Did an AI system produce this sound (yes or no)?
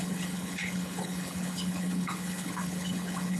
yes